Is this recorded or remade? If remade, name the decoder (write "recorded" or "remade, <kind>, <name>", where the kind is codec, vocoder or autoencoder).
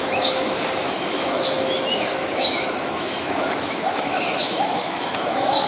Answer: remade, autoencoder, DAC-VAE